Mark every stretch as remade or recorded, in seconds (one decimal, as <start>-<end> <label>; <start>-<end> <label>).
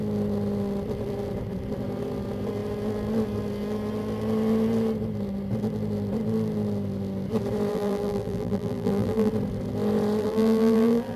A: 0.0-7.7 recorded; 7.7-9.3 remade; 9.3-10.2 recorded; 10.2-11.2 remade